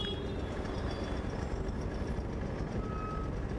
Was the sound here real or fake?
real